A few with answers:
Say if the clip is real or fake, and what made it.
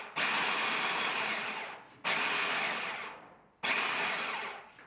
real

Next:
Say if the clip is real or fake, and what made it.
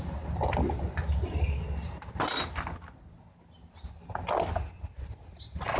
real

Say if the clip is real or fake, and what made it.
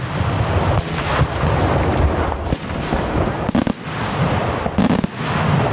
real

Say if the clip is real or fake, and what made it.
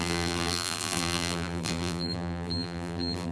fake, vocoder, BigVGAN v2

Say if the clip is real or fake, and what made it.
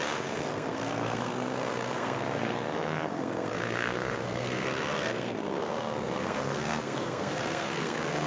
fake, codec, SNAC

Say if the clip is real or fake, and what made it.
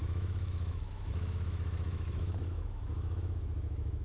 fake, autoencoder, DAC-VAE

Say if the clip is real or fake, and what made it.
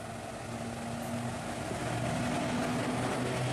real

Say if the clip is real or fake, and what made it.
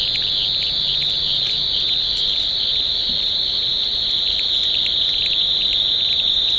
real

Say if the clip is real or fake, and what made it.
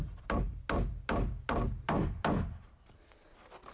real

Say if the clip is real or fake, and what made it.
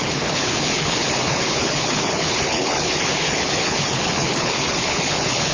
fake, codec, HILCodec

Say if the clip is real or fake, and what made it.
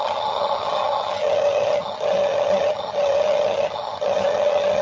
fake, vocoder, HiFi-GAN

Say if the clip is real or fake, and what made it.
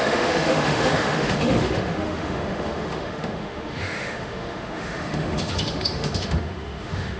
fake, autoencoder, DAC-VAE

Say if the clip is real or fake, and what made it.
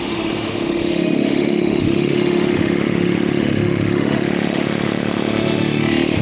fake, autoencoder, DAC-VAE